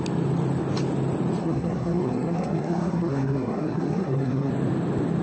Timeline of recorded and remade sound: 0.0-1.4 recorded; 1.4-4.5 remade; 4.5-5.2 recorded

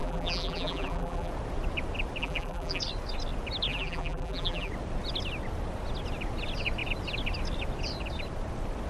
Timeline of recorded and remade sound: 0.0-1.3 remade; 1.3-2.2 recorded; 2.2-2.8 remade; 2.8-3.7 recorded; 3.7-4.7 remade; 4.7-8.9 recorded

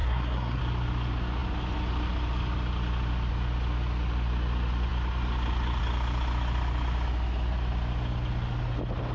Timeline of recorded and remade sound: 0.0-0.6 remade; 0.6-9.1 recorded

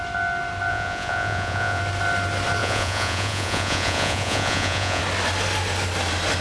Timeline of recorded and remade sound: 0.0-0.7 recorded; 0.7-1.8 remade; 1.8-2.6 recorded; 2.6-5.0 remade; 5.0-6.4 recorded